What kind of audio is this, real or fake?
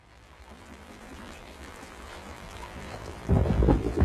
fake